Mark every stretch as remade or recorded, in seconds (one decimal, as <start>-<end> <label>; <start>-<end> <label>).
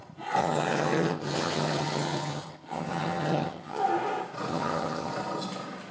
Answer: 0.0-0.4 recorded; 0.4-3.8 remade; 3.8-4.5 recorded; 4.5-5.1 remade; 5.1-5.9 recorded